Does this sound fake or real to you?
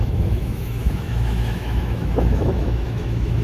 fake